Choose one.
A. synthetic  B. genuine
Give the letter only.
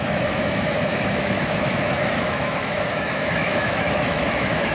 A